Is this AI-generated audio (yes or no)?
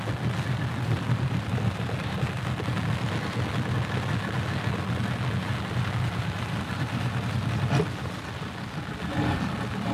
no